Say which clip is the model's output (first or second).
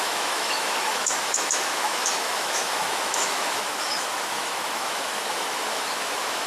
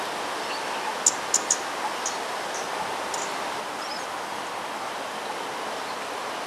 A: first